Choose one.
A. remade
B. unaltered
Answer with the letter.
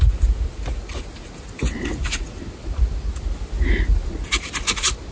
B